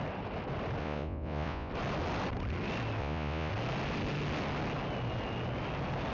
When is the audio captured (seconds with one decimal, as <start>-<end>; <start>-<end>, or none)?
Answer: 0.0-0.8; 1.7-3.0; 3.5-6.1